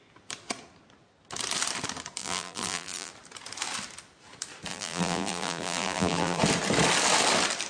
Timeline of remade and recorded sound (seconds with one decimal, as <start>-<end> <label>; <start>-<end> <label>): 0.0-2.2 recorded; 2.2-3.1 remade; 3.1-4.7 recorded; 4.7-6.4 remade; 6.4-7.7 recorded